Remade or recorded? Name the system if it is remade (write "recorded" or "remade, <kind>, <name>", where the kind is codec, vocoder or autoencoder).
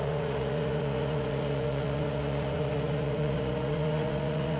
remade, vocoder, Vocos